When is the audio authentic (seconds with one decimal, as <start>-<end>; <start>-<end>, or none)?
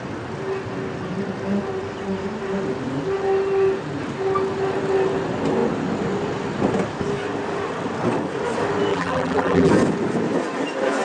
0.0-8.9; 9.7-11.0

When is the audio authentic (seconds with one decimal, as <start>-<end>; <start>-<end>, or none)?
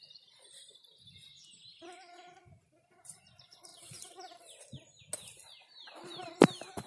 0.0-1.6; 2.1-3.7; 5.0-5.4; 6.5-6.9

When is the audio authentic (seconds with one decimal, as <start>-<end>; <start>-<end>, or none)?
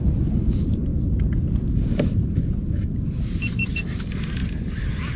4.4-5.2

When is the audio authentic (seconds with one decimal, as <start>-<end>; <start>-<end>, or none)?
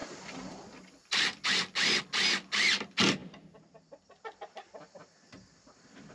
2.0-3.2; 5.0-6.1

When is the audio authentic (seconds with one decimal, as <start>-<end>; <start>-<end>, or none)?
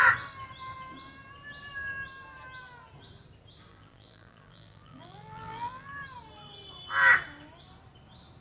0.0-3.7; 5.9-8.4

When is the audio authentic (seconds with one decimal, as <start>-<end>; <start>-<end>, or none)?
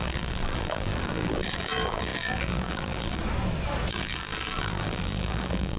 3.2-3.9